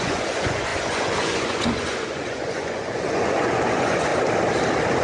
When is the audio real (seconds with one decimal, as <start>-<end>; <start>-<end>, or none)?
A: 4.1-5.0

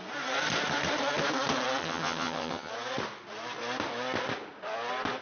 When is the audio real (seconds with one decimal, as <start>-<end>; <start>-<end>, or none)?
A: 0.0-1.8; 2.7-5.2